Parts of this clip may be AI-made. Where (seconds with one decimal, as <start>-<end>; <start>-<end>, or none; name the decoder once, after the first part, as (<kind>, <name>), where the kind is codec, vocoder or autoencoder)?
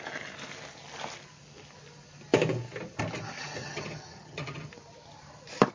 3.6-4.7 (vocoder, HiFi-GAN)